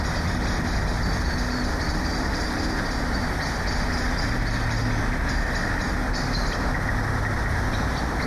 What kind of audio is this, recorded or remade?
recorded